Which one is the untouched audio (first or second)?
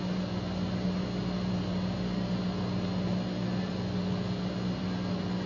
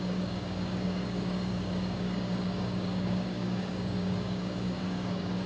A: first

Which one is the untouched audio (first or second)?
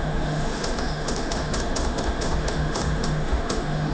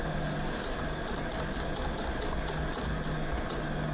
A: second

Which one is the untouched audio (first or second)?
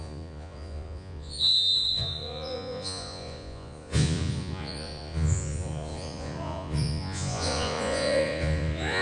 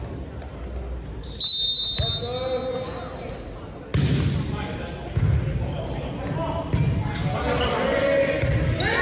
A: second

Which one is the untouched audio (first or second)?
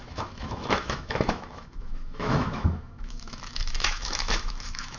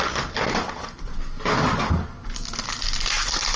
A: second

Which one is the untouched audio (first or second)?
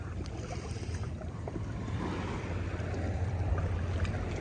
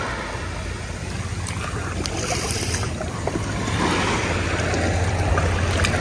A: second